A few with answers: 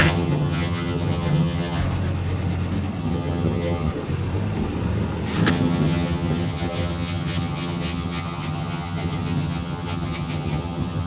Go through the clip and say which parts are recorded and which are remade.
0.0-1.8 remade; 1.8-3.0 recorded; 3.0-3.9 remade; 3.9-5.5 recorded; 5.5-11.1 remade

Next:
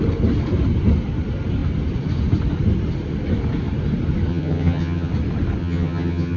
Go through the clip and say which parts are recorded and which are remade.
0.0-4.3 recorded; 4.3-5.1 remade; 5.1-5.6 recorded; 5.6-6.4 remade

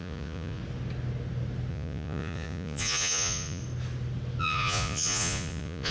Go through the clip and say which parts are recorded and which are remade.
0.0-0.6 remade; 0.6-1.7 recorded; 1.7-3.6 remade; 3.6-4.4 recorded; 4.4-5.9 remade

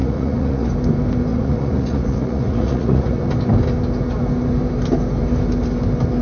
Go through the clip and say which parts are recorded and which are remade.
0.0-0.7 remade; 0.7-1.3 recorded; 1.3-3.2 remade; 3.2-6.2 recorded

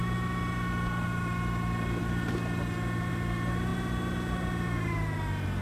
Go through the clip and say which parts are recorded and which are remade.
0.0-5.6 recorded

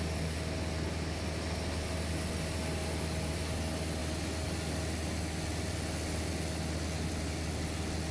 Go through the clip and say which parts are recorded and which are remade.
0.0-8.1 recorded